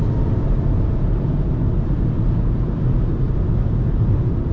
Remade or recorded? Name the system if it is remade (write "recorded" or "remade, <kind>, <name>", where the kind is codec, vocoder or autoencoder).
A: recorded